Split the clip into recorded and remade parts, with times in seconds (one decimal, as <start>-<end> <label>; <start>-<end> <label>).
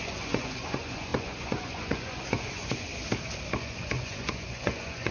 0.0-2.9 remade; 2.9-3.6 recorded; 3.6-5.1 remade